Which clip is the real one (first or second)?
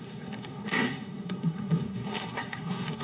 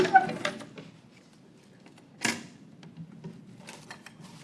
second